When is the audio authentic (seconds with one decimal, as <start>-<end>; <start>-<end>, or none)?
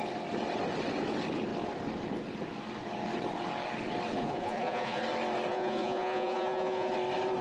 0.0-4.2; 5.0-5.5; 6.9-7.4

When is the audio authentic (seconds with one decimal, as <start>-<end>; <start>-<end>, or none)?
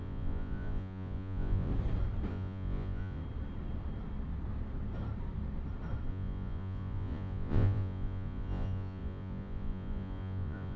1.7-2.3; 3.2-6.1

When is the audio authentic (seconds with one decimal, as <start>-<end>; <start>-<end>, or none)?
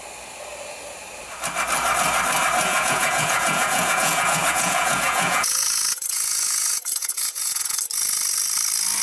0.0-2.7; 7.8-9.0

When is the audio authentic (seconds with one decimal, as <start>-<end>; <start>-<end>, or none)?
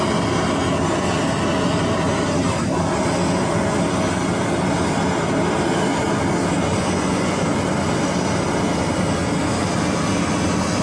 0.0-6.8; 7.4-10.8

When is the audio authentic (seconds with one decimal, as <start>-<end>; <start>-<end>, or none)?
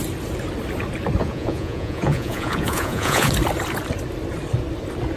0.0-1.2; 3.3-5.2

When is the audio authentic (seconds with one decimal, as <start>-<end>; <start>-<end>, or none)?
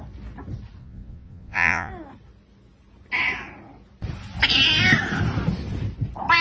0.0-0.8; 1.9-6.4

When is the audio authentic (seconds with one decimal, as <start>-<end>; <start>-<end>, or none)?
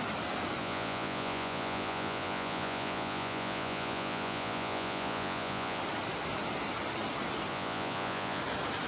0.0-0.6; 5.8-7.5; 8.4-8.9